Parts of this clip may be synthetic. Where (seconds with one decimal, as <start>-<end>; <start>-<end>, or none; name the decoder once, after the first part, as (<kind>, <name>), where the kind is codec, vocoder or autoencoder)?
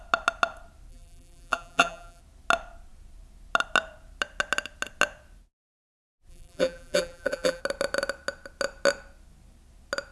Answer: 0.9-2.2 (vocoder, BigVGAN v2); 6.3-7.6